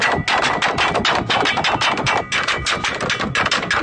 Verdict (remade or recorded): recorded